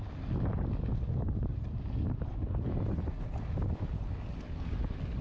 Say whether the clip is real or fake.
real